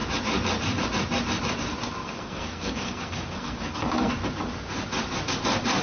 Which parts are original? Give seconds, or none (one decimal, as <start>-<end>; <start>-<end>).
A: 0.0-2.0; 4.1-5.8